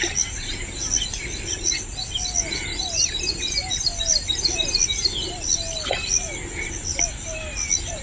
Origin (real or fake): real